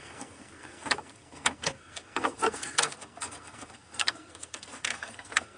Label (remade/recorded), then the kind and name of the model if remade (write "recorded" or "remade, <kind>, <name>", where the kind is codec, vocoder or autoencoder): remade, codec, SNAC